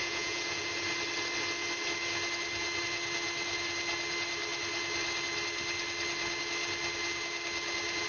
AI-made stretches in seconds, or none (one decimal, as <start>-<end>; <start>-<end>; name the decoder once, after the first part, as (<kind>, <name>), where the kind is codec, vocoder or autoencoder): 0.0-0.6 (vocoder, Vocos)